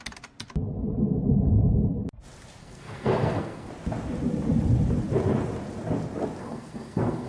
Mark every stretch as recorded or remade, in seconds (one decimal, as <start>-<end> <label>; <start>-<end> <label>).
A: 0.0-2.6 recorded; 2.6-3.7 remade; 3.7-6.4 recorded; 6.4-7.3 remade